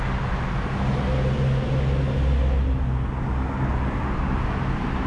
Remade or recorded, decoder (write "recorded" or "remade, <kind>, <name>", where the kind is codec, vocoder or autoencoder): recorded